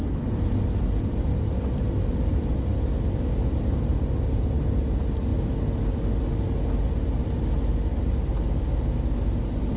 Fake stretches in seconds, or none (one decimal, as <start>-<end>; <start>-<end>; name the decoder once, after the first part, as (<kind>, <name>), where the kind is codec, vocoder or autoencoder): none